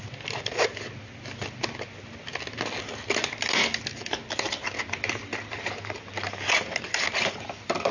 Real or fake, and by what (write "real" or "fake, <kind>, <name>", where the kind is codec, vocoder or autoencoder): real